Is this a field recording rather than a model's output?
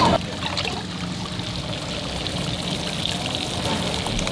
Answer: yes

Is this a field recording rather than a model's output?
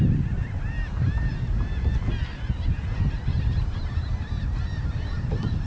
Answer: yes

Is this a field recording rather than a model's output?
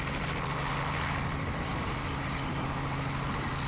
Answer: yes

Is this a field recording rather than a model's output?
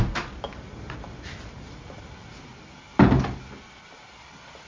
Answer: yes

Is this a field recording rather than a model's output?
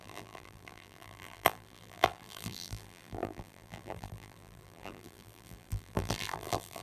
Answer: no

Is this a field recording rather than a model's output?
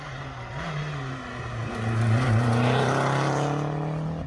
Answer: yes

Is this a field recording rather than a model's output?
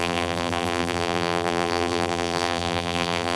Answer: no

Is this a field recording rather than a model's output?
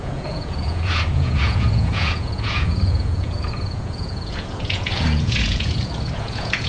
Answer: no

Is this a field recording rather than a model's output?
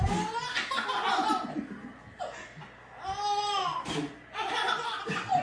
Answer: yes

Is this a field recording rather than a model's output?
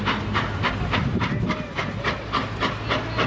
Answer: yes